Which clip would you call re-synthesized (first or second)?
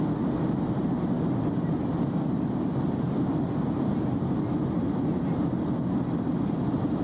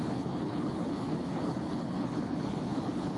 second